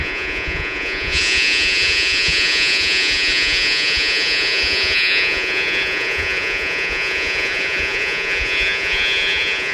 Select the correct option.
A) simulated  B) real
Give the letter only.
A